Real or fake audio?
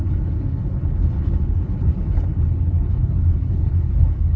fake